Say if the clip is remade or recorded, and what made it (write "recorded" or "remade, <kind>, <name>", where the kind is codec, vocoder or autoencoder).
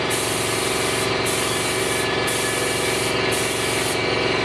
recorded